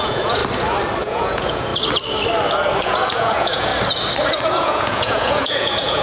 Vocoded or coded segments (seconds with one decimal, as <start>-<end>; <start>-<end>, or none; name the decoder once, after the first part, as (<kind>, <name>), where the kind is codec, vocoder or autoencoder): 0.0-0.4 (vocoder, Vocos); 1.0-1.7; 2.8-3.7; 4.5-6.0